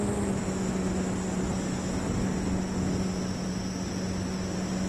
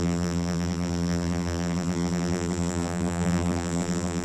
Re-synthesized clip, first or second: second